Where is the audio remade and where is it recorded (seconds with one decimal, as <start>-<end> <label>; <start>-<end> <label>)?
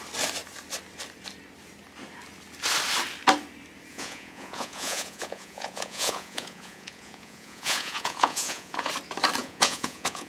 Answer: 0.0-3.9 recorded; 3.9-8.9 remade; 8.9-9.4 recorded; 9.4-10.3 remade